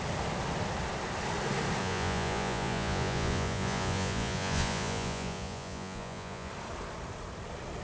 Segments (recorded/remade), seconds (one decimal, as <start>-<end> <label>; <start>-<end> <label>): 0.0-1.8 recorded; 1.8-6.5 remade; 6.5-7.8 recorded